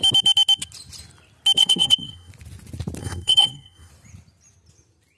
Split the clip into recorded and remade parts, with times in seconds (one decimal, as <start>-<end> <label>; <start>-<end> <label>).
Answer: 0.0-1.6 recorded; 1.6-2.3 remade; 2.3-3.0 recorded; 3.0-3.9 remade; 3.9-5.2 recorded